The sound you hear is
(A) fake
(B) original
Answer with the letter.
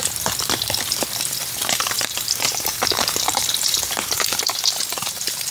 A